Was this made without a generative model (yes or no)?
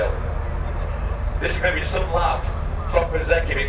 yes